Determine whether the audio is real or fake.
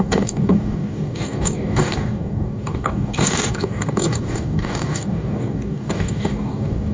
fake